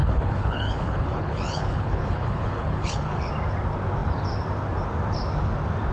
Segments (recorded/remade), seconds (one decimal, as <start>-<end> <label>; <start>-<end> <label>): 0.0-3.3 remade; 3.3-5.9 recorded